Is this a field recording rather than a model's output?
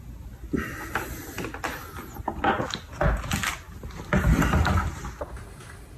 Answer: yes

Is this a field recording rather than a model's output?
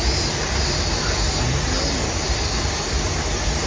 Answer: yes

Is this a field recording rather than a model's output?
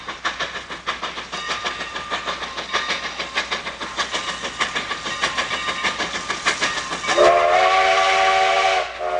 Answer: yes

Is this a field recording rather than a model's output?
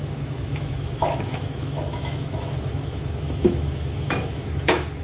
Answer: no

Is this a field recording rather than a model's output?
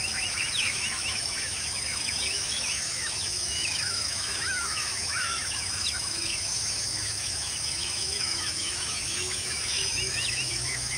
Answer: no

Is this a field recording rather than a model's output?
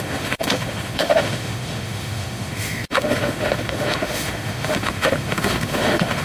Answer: no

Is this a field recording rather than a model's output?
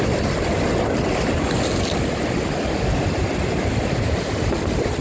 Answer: yes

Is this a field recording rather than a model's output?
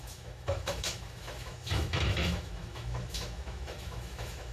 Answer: no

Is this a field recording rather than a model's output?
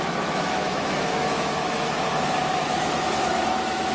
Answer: no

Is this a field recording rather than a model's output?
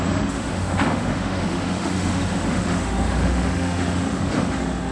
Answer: no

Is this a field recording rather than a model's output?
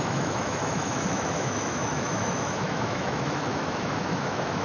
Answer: no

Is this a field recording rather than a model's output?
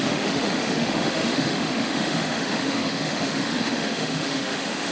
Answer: no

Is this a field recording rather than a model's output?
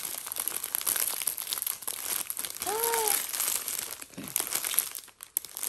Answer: yes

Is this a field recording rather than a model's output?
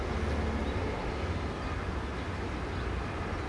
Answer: yes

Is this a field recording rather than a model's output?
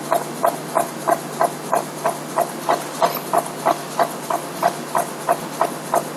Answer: yes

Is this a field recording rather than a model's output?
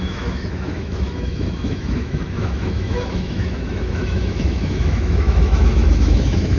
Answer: no